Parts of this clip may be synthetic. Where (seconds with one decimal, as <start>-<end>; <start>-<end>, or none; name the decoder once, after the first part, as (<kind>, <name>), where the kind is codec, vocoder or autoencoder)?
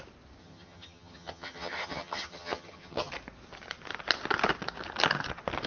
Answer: 0.4-3.1 (vocoder, HiFi-GAN)